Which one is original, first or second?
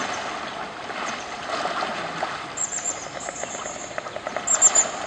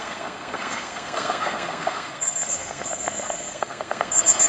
first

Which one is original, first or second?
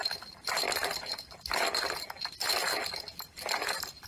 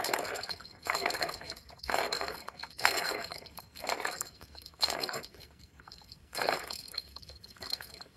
first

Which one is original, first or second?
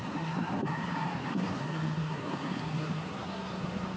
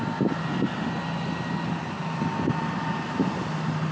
second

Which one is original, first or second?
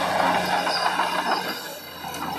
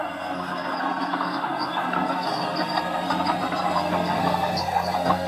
first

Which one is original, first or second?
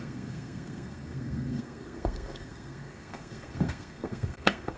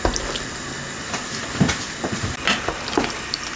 second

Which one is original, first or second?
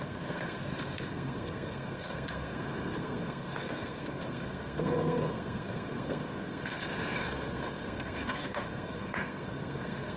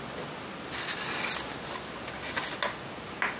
second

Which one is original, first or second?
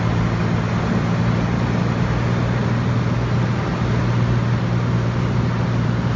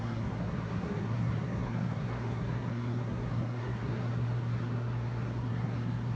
first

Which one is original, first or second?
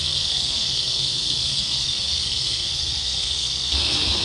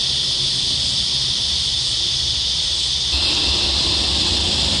second